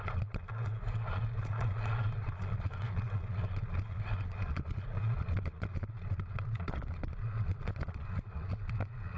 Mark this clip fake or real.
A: fake